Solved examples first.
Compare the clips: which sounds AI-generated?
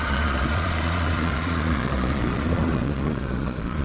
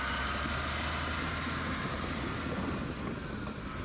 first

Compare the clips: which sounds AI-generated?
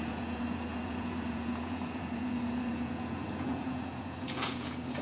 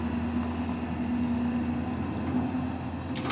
first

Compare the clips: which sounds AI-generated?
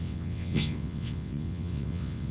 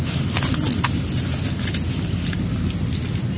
first